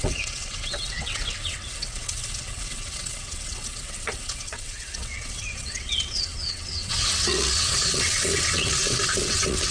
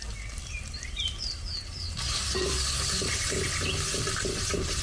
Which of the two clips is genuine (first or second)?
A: second